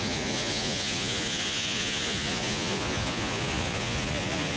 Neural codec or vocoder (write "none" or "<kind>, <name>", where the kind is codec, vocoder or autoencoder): vocoder, Vocos